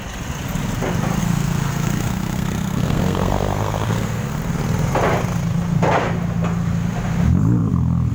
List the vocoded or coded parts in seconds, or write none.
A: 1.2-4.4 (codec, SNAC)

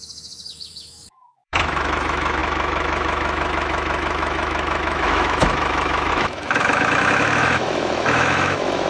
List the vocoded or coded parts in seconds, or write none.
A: 0.0-8.9 (autoencoder, DAC-VAE)

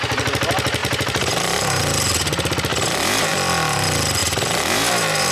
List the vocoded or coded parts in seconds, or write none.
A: 0.8-1.8 (vocoder, BigVGAN v2); 2.7-3.3; 4.2-5.3

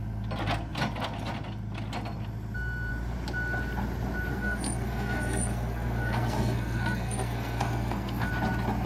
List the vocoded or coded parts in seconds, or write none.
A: 4.3-8.3 (codec, SNAC)